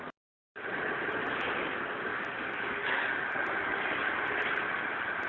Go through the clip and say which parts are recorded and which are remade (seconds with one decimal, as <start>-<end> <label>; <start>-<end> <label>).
0.0-2.1 recorded; 2.1-3.2 remade; 3.2-5.3 recorded